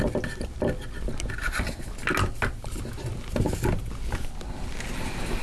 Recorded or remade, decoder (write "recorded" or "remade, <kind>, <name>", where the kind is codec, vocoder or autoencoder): recorded